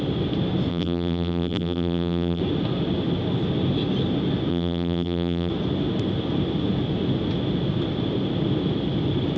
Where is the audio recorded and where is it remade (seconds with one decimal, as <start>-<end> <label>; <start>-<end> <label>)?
0.0-0.7 recorded; 0.7-2.4 remade; 2.4-4.5 recorded; 4.5-5.5 remade; 5.5-9.4 recorded